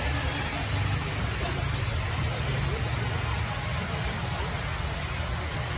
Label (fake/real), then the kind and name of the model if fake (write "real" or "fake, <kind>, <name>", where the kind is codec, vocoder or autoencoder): real